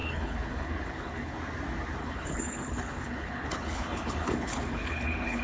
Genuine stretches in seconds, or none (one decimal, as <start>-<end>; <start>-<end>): 1.4-2.0